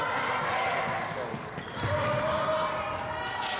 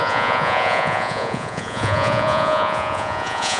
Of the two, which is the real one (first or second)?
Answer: first